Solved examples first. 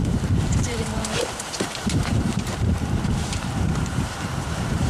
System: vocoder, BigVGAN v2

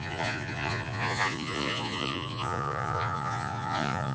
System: vocoder, Vocos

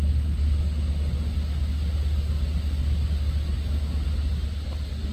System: none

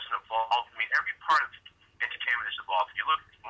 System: none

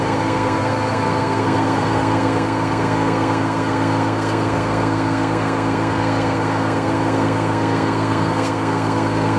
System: codec, SNAC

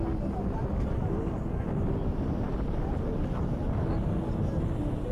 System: none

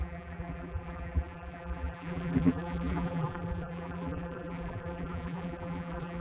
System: vocoder, BigVGAN v2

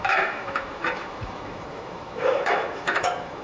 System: autoencoder, DAC-VAE